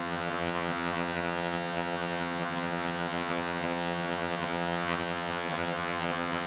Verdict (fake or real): fake